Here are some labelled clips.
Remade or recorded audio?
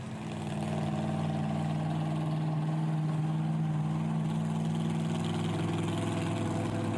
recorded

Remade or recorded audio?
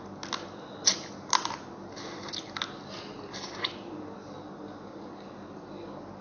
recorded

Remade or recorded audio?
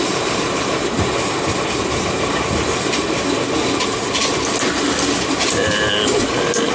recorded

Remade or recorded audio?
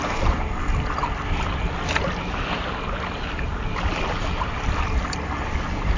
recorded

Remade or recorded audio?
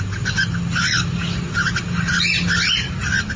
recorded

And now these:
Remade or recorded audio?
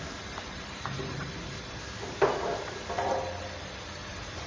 recorded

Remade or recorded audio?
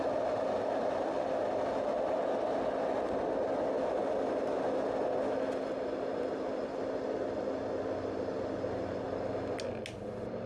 recorded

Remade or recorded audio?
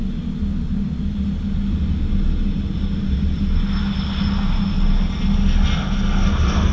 recorded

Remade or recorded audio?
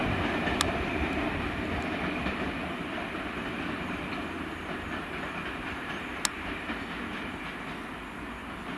recorded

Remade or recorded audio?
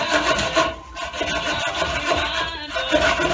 recorded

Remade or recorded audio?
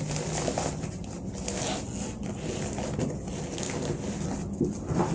recorded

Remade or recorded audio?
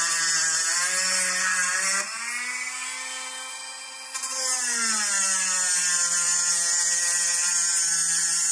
recorded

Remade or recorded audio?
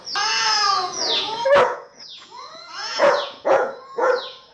remade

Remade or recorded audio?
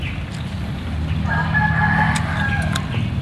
recorded